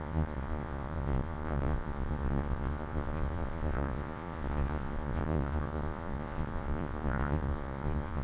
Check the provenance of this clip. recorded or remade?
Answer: remade